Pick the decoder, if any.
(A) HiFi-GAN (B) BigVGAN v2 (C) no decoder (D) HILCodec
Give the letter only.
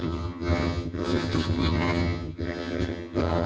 A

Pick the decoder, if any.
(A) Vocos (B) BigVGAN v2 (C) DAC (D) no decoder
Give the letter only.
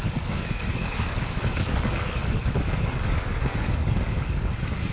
C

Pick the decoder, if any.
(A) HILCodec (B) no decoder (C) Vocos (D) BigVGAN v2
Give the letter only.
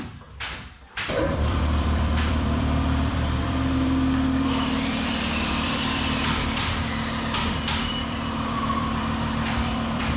D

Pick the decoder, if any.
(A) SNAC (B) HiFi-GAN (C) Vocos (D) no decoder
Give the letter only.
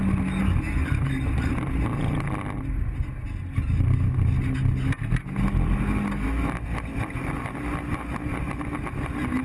D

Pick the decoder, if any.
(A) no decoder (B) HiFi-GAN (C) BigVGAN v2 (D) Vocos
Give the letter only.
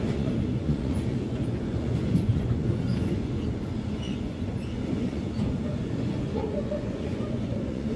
D